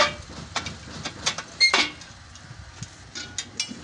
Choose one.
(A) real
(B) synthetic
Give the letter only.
A